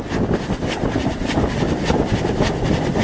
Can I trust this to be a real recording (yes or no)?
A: yes